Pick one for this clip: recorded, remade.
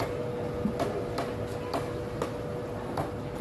recorded